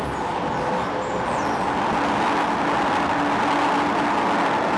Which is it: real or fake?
real